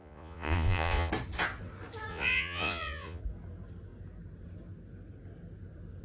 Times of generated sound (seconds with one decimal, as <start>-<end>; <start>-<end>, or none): 0.0-1.1; 2.1-3.2